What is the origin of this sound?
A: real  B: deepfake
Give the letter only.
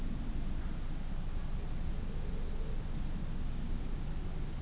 A